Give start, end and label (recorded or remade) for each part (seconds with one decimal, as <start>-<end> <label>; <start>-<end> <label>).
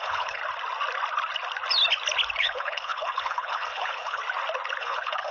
0.0-0.4 remade; 0.4-2.4 recorded; 2.4-4.2 remade; 4.2-4.8 recorded; 4.8-5.3 remade